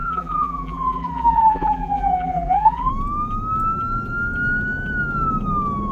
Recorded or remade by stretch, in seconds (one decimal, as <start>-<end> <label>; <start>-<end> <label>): 0.0-2.9 remade; 2.9-5.9 recorded